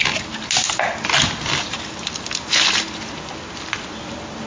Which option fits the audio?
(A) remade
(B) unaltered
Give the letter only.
B